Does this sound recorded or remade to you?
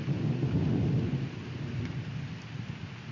recorded